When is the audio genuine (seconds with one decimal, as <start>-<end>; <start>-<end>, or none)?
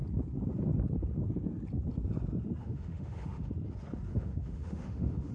0.0-2.6; 3.5-4.1